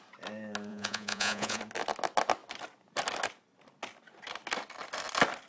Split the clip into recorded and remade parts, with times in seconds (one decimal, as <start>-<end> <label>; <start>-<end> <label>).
0.0-0.7 recorded; 0.7-1.6 remade; 1.6-5.5 recorded